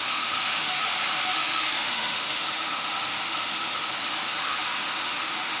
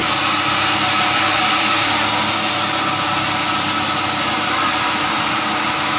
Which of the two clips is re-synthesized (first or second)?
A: first